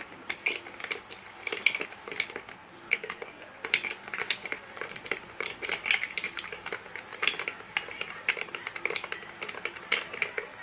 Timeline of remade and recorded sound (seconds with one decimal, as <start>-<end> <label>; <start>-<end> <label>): 0.0-2.6 recorded; 2.6-5.7 remade; 5.7-10.6 recorded

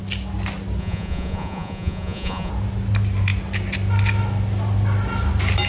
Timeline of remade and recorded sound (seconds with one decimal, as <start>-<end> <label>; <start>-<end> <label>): 0.0-0.8 recorded; 0.8-2.5 remade; 2.5-5.7 recorded